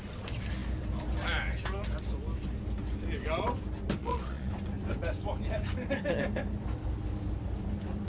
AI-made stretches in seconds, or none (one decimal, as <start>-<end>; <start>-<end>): 4.0-4.5